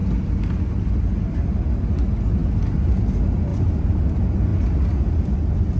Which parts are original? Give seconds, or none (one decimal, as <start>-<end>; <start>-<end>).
0.0-5.8

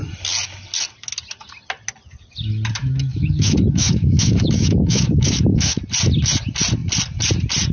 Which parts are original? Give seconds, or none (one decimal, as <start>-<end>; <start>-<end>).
0.0-2.8; 5.8-7.7

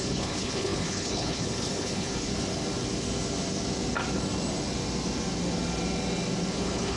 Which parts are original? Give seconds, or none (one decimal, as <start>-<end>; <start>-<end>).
2.3-6.5

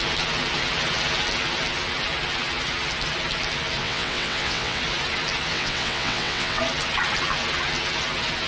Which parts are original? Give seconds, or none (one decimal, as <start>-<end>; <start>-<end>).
0.0-3.8; 4.8-5.5; 6.6-8.5